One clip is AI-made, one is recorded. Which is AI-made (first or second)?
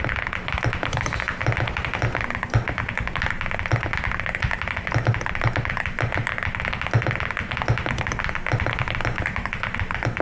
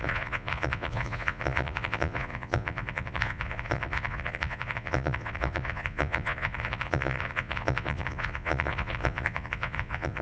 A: second